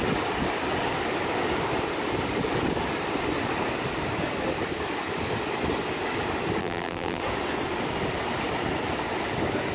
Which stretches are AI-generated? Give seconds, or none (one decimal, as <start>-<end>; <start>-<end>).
6.6-7.2